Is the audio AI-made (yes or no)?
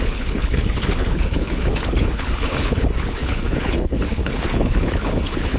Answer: yes